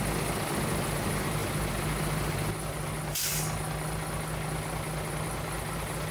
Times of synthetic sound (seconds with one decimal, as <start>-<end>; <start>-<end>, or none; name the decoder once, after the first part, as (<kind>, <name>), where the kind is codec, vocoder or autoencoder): none